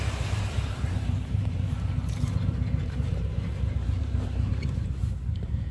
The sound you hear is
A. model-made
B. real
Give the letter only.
A